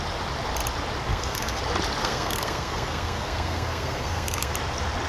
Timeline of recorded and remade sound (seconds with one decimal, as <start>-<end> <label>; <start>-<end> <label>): 0.0-1.1 recorded; 1.1-1.6 remade; 1.6-2.0 recorded; 2.0-4.5 remade; 4.5-5.1 recorded